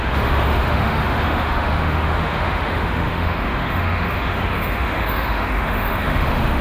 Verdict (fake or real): fake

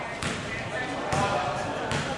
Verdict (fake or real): real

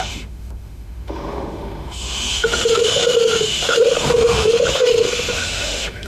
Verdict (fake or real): fake